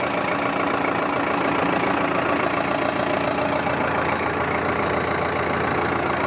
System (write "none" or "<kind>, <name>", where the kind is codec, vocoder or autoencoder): none